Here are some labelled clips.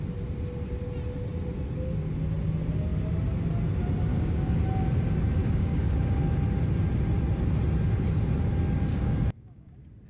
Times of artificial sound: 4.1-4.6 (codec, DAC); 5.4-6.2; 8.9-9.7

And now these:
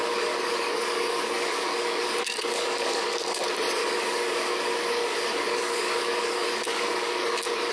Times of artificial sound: 0.0-3.4 (codec, DAC); 3.8-7.7

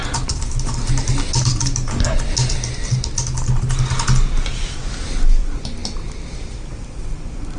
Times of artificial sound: none

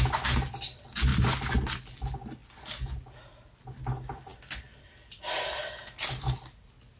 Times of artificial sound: none

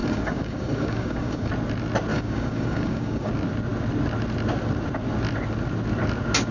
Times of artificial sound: 0.0-1.5 (codec, DAC); 2.1-3.3

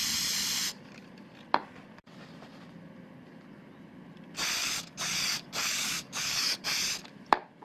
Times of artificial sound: 4.6-6.6 (codec, DAC)